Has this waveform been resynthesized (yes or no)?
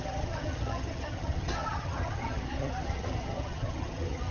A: yes